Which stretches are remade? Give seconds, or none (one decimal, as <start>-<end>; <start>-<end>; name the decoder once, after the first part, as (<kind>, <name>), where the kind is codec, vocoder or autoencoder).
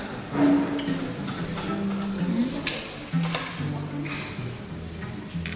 none